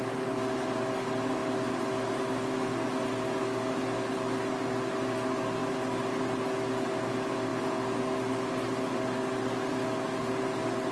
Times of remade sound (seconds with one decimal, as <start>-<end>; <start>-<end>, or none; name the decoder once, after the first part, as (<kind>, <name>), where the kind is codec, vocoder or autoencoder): 1.4-2.2 (vocoder, BigVGAN v2); 5.6-6.2